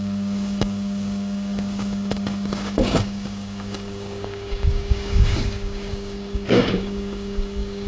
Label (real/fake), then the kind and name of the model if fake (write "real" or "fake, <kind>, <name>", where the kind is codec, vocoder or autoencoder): fake, codec, DAC